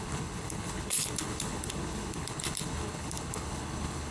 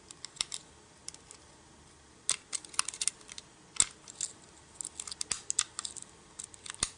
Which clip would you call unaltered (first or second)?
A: second